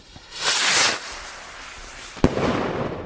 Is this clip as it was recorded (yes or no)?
yes